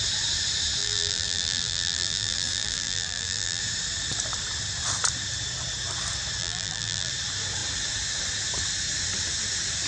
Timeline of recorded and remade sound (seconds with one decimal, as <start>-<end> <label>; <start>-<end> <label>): 0.0-0.8 recorded; 0.8-3.6 remade; 3.6-6.4 recorded; 6.4-7.1 remade; 7.1-9.9 recorded